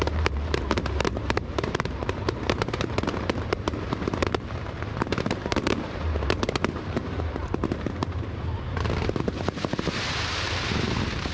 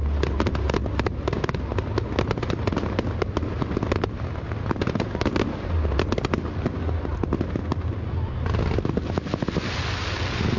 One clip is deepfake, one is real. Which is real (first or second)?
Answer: second